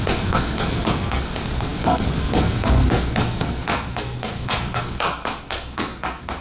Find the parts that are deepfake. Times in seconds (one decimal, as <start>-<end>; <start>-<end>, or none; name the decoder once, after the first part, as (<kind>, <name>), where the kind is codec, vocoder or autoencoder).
0.0-6.4 (codec, SNAC)